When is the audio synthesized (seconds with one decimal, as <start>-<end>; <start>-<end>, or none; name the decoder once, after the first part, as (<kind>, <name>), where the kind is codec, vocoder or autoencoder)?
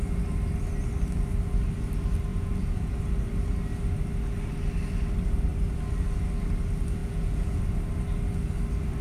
2.3-2.9 (vocoder, Vocos); 7.0-7.6